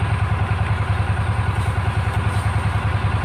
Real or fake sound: real